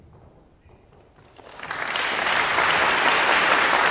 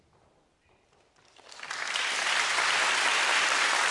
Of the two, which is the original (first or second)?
first